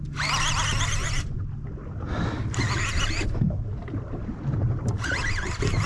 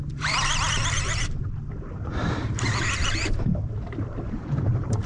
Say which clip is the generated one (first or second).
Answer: second